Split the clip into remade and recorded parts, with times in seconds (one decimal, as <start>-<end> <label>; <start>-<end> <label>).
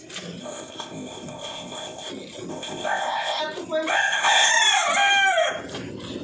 0.0-0.4 recorded; 0.4-2.1 remade; 2.1-2.5 recorded; 2.5-3.4 remade; 3.4-3.9 recorded; 3.9-4.5 remade; 4.5-6.2 recorded